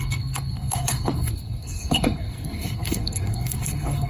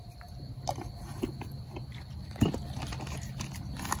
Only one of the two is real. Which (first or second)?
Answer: second